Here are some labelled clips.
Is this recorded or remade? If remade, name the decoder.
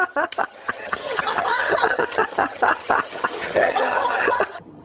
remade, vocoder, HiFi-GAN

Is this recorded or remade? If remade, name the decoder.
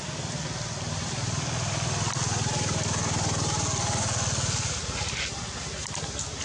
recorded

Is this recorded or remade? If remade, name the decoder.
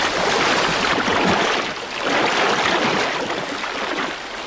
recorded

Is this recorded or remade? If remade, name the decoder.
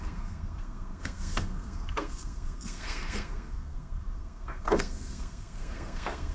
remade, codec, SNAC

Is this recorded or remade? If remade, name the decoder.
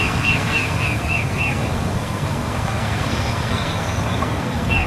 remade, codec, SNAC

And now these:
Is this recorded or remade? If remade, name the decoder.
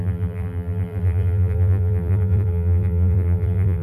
remade, vocoder, BigVGAN v2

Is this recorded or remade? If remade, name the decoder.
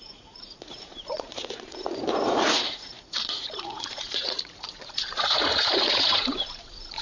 remade, vocoder, Vocos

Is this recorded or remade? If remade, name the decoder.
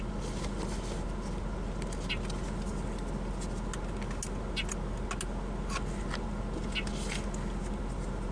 recorded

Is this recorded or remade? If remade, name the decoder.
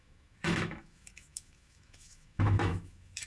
remade, autoencoder, DAC-VAE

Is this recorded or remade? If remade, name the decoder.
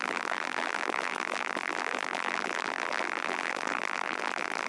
remade, vocoder, BigVGAN v2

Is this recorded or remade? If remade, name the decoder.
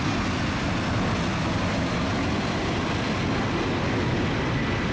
recorded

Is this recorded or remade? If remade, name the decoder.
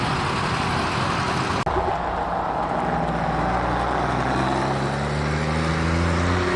recorded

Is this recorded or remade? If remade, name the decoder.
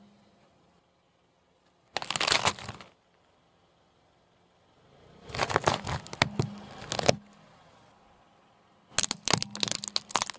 recorded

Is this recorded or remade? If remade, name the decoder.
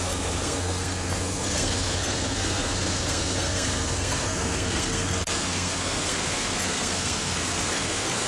remade, codec, SNAC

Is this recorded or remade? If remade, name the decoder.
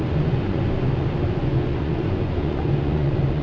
remade, vocoder, Vocos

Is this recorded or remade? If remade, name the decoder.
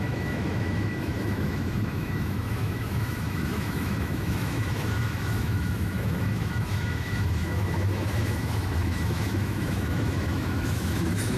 remade, autoencoder, DAC-VAE